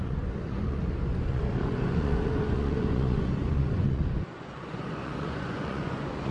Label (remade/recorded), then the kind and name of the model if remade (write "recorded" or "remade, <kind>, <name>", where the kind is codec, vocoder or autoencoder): remade, vocoder, Vocos